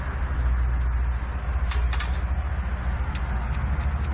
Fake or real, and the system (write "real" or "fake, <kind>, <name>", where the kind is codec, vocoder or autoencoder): real